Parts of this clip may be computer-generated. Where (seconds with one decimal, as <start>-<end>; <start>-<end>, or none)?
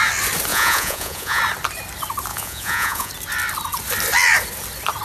0.5-1.4; 2.3-3.1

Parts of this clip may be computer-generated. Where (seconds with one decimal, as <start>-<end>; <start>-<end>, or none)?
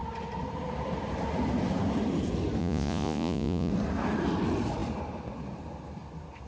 2.6-3.7